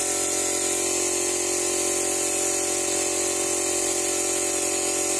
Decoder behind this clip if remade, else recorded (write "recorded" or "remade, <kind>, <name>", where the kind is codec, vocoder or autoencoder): recorded